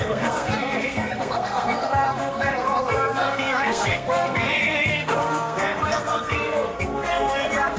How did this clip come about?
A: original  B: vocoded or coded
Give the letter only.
B